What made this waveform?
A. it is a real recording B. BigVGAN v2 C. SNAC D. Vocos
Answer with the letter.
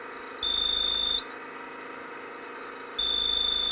A